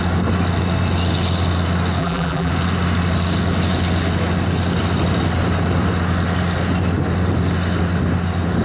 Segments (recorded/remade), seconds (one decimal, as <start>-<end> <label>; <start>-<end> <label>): 0.0-2.0 recorded; 2.0-2.5 remade; 2.5-8.6 recorded

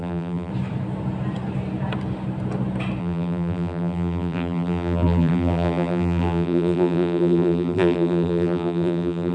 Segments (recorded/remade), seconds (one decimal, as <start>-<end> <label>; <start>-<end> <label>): 0.0-0.5 remade; 0.5-3.0 recorded; 3.0-9.3 remade

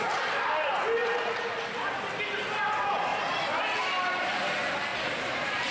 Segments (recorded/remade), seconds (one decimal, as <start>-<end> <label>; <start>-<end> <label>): 0.0-3.1 recorded; 3.1-3.6 remade; 3.6-4.9 recorded; 4.9-5.7 remade

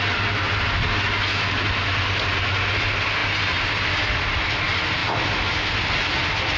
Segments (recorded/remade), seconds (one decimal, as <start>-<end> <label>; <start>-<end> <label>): 0.0-6.6 recorded

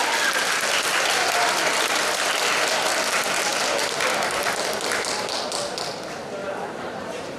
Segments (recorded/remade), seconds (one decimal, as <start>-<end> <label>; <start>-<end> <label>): 0.0-6.4 recorded; 6.4-7.4 remade